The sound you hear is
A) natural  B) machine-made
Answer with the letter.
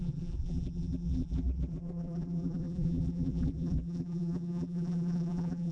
B